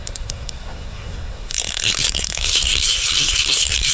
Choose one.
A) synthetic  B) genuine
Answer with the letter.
A